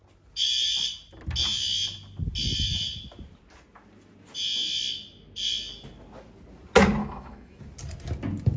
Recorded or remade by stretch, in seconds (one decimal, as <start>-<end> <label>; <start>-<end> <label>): 0.0-7.0 recorded; 7.0-7.6 remade; 7.6-8.6 recorded